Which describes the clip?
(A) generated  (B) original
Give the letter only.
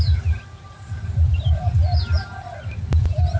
B